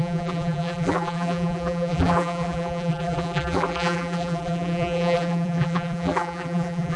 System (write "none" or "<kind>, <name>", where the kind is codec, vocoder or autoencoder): vocoder, BigVGAN v2